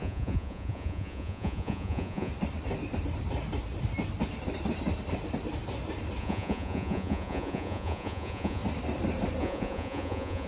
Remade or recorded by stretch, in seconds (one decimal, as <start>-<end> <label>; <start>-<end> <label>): 0.0-2.3 remade; 2.3-6.2 recorded; 6.2-8.6 remade; 8.6-9.4 recorded; 9.4-10.5 remade